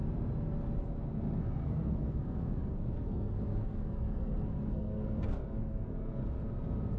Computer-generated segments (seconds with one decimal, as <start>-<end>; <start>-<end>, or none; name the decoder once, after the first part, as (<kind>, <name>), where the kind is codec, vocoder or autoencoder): 1.4-6.2 (codec, SNAC)